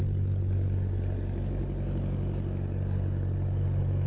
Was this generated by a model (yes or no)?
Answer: no